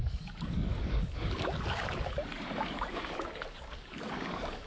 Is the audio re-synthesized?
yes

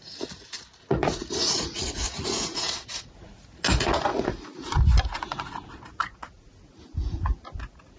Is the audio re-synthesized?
yes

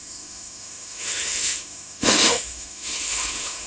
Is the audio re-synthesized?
yes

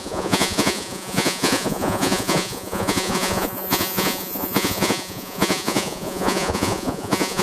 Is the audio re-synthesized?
yes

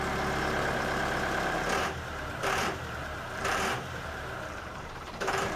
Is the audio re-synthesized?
yes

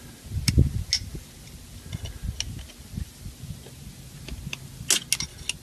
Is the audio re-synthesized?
no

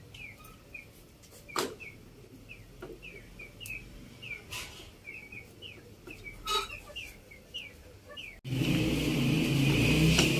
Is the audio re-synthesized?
no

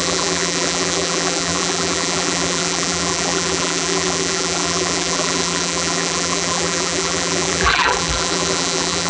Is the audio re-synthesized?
yes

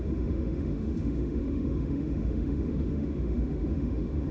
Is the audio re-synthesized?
yes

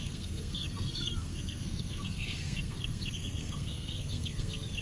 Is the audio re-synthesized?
yes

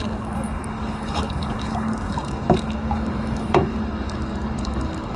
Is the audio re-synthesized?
yes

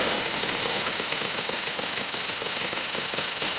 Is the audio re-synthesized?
yes